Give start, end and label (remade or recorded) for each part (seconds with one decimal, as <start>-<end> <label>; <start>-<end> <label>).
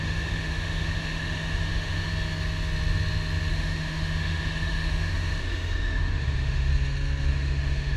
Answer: 0.0-2.1 remade; 2.1-3.5 recorded; 3.5-6.7 remade; 6.7-7.3 recorded; 7.3-8.0 remade